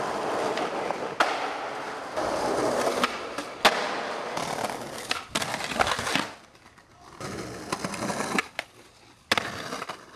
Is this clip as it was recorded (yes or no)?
yes